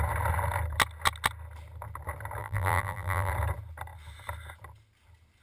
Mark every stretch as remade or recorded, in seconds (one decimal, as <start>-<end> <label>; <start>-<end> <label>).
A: 0.0-2.4 recorded; 2.4-3.3 remade; 3.3-5.4 recorded